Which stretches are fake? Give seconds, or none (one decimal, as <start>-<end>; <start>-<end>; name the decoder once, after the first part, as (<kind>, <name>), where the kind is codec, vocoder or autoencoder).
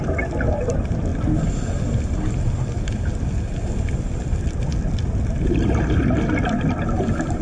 none